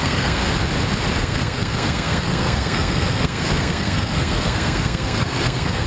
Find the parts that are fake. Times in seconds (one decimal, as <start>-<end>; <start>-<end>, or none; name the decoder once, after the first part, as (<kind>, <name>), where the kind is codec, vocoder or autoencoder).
0.0-0.4 (codec, SNAC); 1.2-5.9